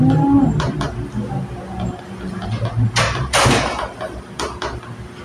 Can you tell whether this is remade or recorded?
recorded